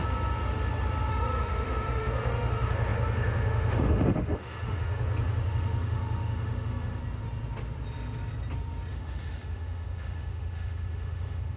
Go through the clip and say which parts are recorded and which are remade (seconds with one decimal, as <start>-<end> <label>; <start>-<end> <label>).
0.0-1.1 recorded; 1.1-5.0 remade; 5.0-5.5 recorded; 5.5-7.0 remade; 7.0-8.9 recorded; 8.9-11.6 remade